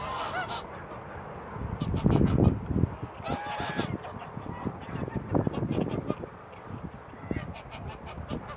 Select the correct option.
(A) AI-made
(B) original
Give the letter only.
B